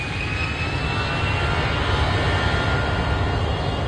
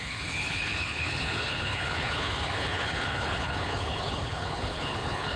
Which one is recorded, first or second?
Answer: first